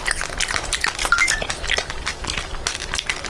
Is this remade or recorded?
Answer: recorded